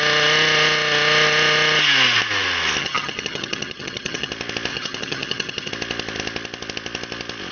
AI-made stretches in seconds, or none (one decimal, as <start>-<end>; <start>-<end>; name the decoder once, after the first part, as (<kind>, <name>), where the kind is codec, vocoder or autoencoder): 2.8-4.3 (vocoder, HiFi-GAN); 4.7-5.7